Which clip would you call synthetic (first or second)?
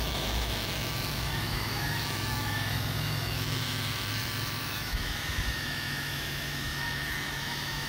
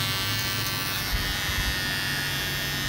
first